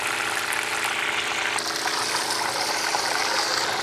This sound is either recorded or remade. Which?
recorded